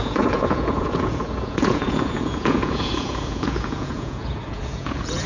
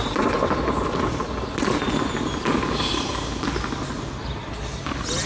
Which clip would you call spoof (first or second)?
first